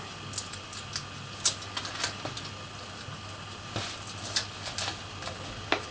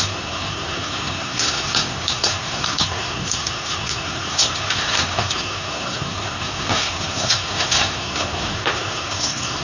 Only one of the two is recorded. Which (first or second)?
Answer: first